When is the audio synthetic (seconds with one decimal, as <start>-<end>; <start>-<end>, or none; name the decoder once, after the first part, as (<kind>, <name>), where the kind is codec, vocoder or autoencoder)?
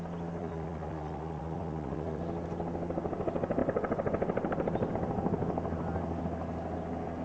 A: 0.4-2.2 (vocoder, Vocos)